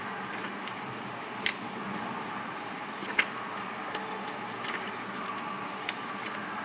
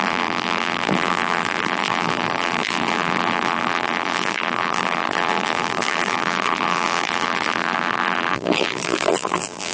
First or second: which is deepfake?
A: second